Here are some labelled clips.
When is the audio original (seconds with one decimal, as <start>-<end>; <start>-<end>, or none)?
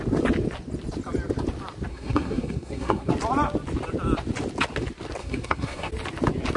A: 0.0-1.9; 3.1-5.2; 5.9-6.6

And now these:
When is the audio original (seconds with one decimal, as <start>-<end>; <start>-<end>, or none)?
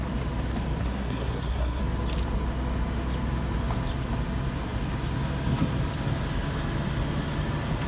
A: 0.0-0.8; 1.8-7.9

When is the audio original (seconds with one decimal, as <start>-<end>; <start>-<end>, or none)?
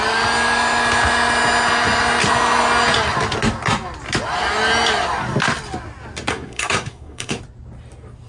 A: 0.0-6.3; 7.4-8.3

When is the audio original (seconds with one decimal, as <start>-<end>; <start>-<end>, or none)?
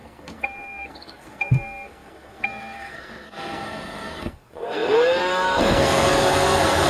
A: none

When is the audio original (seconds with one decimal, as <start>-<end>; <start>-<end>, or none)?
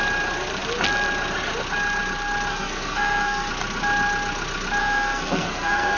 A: 0.0-2.5; 3.5-4.8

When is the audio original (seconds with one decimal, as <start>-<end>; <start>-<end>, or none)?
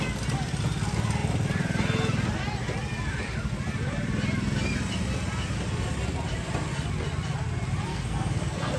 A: 0.0-7.9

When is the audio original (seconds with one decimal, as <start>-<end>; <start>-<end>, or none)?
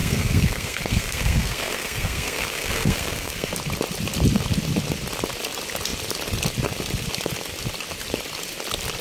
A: 3.5-9.0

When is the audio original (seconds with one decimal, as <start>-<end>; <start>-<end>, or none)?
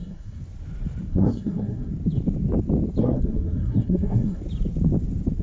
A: 0.4-1.1; 1.9-3.0; 4.4-5.4